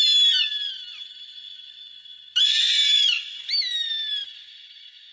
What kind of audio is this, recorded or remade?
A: recorded